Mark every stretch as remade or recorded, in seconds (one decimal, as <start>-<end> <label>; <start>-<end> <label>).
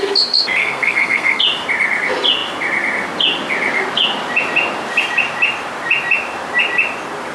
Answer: 0.0-0.6 recorded; 0.6-1.4 remade; 1.4-7.3 recorded